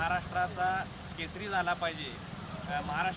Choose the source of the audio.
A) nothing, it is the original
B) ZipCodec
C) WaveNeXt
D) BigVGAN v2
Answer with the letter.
A